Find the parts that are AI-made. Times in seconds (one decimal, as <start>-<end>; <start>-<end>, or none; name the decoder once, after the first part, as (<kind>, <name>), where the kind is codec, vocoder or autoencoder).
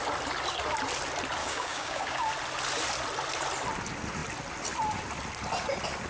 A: 1.4-2.3 (codec, DAC)